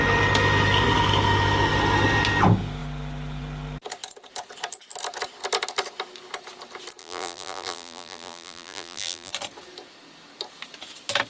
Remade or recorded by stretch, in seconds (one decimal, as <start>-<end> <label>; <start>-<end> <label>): 0.0-7.0 recorded; 7.0-9.3 remade; 9.3-11.3 recorded